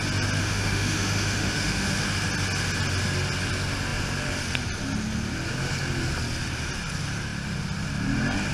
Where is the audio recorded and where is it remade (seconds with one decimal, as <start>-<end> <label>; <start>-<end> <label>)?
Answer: 0.0-0.4 recorded; 0.4-2.0 remade; 2.0-8.5 recorded

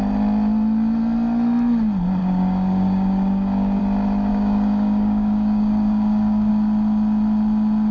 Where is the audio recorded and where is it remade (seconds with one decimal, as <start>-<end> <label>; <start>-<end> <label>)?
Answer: 0.0-2.2 recorded; 2.2-3.8 remade; 3.8-4.3 recorded; 4.3-6.5 remade; 6.5-7.9 recorded